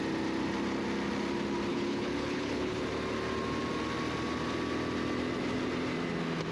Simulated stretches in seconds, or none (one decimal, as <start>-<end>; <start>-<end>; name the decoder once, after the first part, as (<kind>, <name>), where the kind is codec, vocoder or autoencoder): 1.7-2.8 (codec, HILCodec)